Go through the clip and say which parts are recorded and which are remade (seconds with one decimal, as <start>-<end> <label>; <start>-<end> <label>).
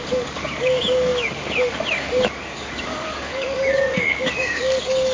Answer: 0.0-5.1 remade